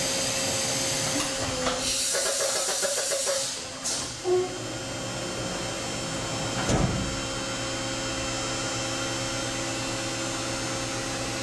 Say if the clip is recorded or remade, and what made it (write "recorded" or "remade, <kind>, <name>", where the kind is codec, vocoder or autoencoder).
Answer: recorded